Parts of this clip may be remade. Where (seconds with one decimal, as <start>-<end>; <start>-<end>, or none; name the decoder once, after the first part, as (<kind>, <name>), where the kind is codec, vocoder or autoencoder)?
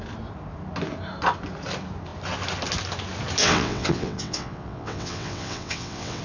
3.4-6.2 (vocoder, WaveNeXt)